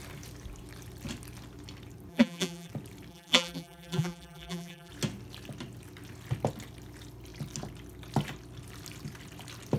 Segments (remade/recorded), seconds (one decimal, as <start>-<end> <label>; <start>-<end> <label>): 0.0-2.1 recorded; 2.1-2.7 remade; 2.7-3.1 recorded; 3.1-4.9 remade; 4.9-9.8 recorded